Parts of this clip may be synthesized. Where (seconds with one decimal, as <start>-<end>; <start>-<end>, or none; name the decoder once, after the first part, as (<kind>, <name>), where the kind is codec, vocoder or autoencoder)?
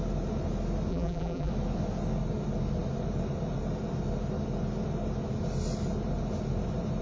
0.9-1.5 (vocoder, BigVGAN v2)